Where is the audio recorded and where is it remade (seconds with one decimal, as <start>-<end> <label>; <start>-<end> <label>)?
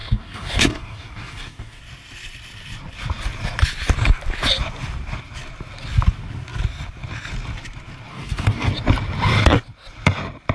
0.0-1.8 remade; 1.8-8.1 recorded; 8.1-8.7 remade; 8.7-10.5 recorded